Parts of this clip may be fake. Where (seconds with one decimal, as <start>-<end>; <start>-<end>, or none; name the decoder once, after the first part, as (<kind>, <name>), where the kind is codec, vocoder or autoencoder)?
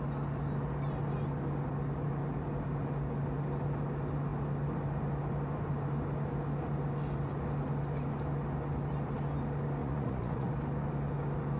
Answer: 9.8-10.5 (vocoder, Vocos)